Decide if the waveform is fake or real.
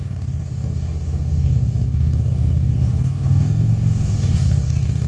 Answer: fake